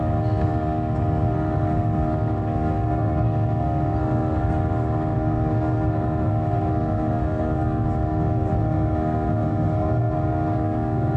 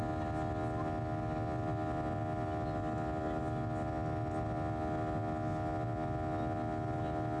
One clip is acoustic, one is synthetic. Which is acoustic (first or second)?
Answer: second